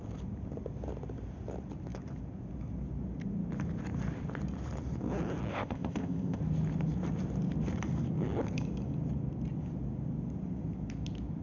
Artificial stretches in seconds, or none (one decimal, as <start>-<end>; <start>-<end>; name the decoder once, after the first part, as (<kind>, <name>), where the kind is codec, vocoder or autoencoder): 5.5-6.4 (codec, ZipCodec)